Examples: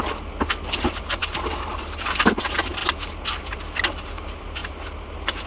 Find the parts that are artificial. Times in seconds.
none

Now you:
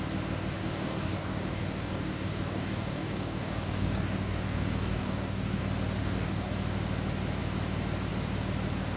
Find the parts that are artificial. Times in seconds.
0.6-5.6 (codec, DAC); 6.0-6.5

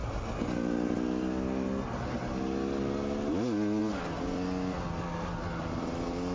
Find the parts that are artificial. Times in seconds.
none